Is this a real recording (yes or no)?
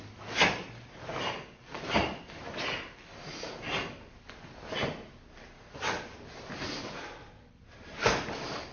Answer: yes